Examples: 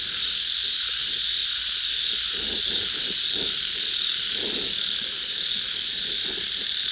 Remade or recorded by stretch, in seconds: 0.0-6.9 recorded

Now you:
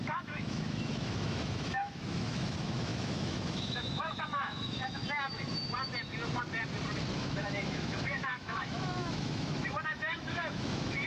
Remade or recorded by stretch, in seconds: 0.0-5.0 remade; 5.0-7.1 recorded; 7.1-11.1 remade

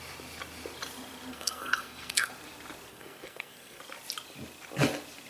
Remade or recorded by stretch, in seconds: 0.0-1.3 recorded; 1.3-2.3 remade; 2.3-2.9 recorded; 2.9-3.8 remade; 3.8-5.3 recorded